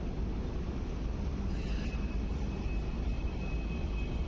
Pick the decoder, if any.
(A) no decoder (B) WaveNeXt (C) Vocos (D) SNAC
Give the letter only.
A